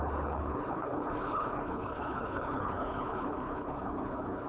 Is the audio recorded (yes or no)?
no